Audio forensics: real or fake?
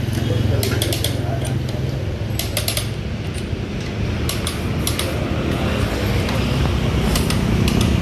real